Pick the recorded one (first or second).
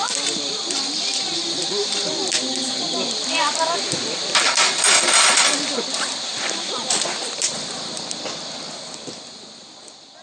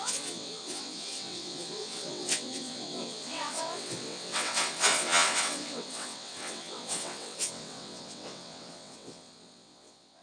first